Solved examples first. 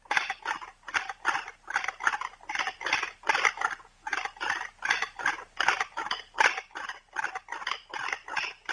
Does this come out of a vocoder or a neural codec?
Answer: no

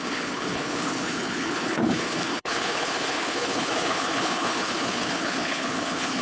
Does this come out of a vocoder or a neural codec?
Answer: yes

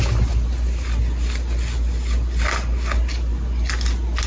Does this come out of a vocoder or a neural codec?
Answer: no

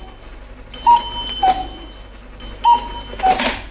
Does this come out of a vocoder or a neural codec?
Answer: no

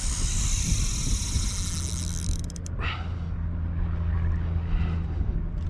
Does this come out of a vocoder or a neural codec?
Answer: no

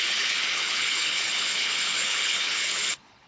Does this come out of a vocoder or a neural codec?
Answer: yes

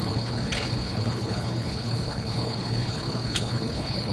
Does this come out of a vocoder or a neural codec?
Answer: yes